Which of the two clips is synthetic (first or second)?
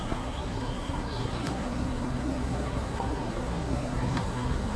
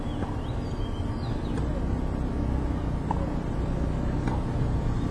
first